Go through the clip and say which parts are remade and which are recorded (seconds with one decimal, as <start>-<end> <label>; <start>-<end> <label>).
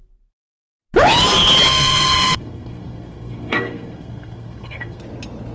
0.0-1.7 recorded; 1.7-5.0 remade; 5.0-5.5 recorded